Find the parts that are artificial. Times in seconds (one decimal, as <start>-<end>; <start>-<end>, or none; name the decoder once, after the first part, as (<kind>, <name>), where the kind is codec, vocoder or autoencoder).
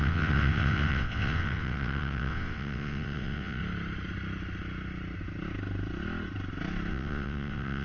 0.0-3.6 (vocoder, WaveNeXt); 6.9-7.8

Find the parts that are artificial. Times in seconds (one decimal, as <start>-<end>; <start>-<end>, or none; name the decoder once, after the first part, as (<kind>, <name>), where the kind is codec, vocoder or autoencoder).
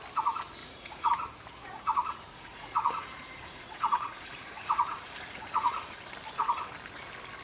0.6-1.1 (vocoder, Vocos); 1.6-6.0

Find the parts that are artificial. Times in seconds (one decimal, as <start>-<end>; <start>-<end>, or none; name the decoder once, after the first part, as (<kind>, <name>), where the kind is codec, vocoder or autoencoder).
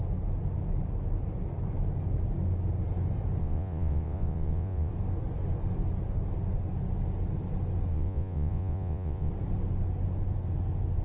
3.4-4.9 (vocoder, Vocos); 7.9-9.3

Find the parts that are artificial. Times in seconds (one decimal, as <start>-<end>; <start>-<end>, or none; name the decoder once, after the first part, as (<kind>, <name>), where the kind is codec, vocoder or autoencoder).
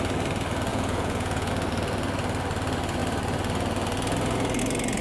0.7-1.5 (vocoder, Vocos)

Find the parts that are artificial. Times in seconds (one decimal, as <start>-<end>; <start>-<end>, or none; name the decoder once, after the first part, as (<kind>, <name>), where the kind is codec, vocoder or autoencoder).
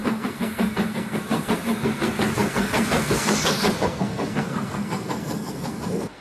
0.0-6.2 (codec, SNAC)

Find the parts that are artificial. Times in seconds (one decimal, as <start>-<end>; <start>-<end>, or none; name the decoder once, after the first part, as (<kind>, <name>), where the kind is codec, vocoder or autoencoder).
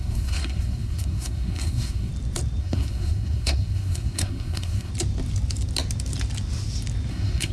0.0-2.1 (codec, SNAC); 2.6-4.9; 7.1-7.5